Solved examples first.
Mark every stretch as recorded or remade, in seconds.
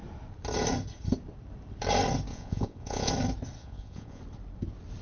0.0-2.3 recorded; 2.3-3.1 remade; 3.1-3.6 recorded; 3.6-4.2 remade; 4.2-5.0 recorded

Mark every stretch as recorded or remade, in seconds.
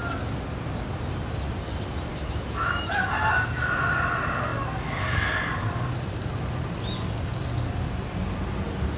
0.0-2.1 recorded; 2.1-3.0 remade; 3.0-9.0 recorded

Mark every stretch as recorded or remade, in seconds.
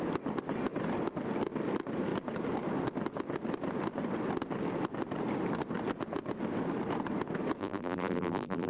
0.0-7.6 recorded; 7.6-8.7 remade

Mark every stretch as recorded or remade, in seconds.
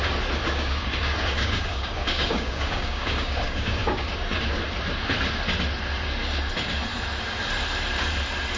0.0-0.4 recorded; 0.4-4.4 remade; 4.4-8.6 recorded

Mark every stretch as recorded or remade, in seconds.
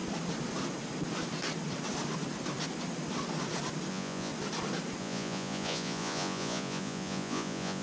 0.0-3.9 recorded; 3.9-4.3 remade; 4.3-5.0 recorded; 5.0-7.8 remade